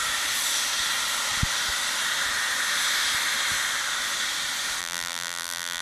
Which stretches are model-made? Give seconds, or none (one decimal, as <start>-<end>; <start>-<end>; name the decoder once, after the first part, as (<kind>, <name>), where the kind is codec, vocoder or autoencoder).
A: 4.8-5.8 (vocoder, BigVGAN v2)